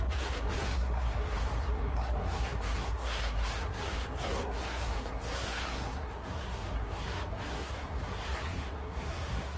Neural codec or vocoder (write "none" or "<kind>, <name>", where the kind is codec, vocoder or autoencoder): codec, SNAC